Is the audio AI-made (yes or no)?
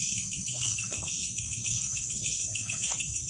yes